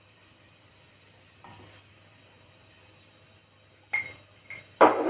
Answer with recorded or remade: remade